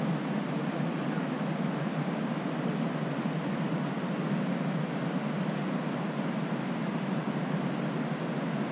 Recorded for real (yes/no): yes